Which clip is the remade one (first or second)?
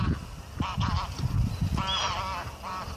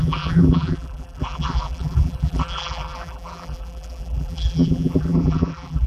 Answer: second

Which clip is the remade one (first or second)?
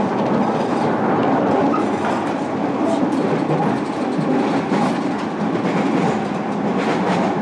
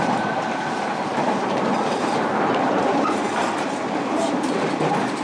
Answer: second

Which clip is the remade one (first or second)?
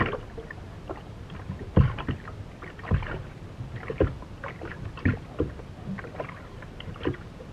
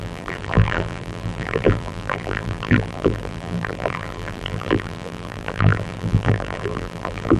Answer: second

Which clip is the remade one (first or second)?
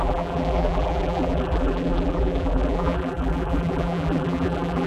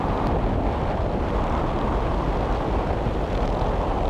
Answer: first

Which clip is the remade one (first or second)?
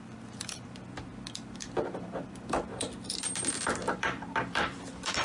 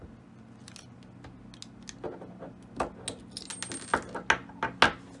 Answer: first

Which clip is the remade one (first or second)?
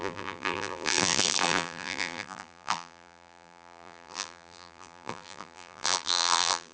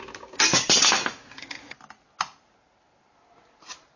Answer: first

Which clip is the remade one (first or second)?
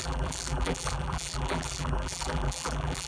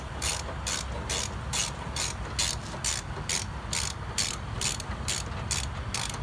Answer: first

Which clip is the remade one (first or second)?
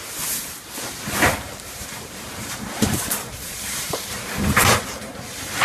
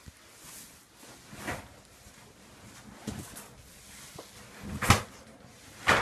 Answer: first